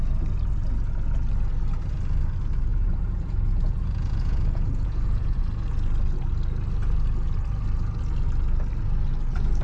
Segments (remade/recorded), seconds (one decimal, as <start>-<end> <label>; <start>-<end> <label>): 0.0-2.7 recorded; 2.7-5.4 remade; 5.4-9.6 recorded